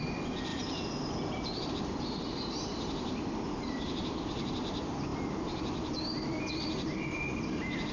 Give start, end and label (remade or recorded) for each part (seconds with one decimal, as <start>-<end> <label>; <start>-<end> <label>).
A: 0.0-0.5 remade; 0.5-1.7 recorded; 1.7-7.9 remade